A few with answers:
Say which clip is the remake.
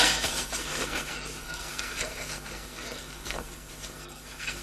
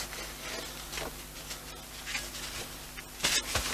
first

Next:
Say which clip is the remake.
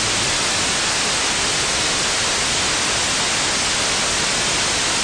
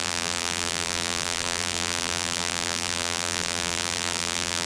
second